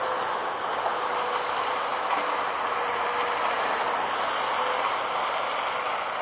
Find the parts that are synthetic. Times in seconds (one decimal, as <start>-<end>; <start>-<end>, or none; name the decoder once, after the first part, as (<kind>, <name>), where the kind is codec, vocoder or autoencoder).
none